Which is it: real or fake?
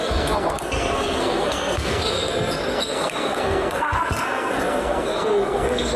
fake